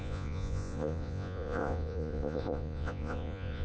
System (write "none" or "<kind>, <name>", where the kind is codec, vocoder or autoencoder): vocoder, Vocos